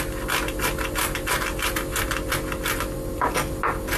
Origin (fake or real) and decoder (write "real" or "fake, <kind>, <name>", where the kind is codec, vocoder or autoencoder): real